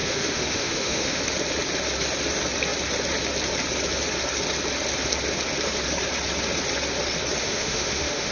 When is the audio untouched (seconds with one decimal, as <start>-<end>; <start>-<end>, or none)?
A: 1.2-7.4

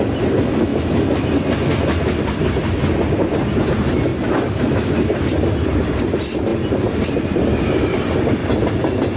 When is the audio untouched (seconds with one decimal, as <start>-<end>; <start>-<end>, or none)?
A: 0.7-3.0; 4.1-4.6; 6.5-7.1; 8.4-9.2

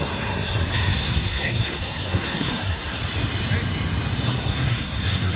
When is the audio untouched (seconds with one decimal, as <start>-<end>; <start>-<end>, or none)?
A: 3.0-4.3

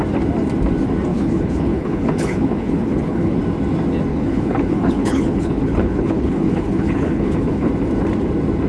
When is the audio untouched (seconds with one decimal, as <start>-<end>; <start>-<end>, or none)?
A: 0.0-1.1; 3.4-4.1; 7.7-8.7

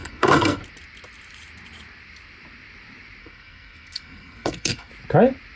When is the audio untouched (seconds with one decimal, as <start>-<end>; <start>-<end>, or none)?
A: 0.6-3.2; 4.9-5.6

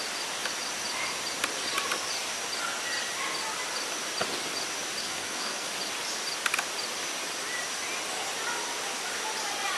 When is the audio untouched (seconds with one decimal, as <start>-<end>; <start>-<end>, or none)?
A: 0.0-5.0; 5.7-9.8

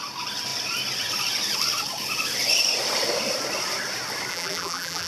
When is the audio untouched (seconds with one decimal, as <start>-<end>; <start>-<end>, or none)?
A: 0.0-4.3

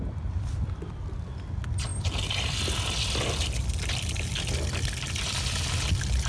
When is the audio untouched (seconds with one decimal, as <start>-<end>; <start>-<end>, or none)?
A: 0.0-6.3